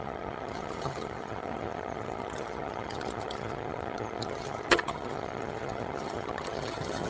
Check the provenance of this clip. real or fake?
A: fake